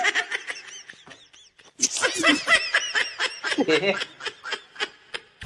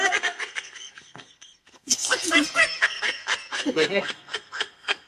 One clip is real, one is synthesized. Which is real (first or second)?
first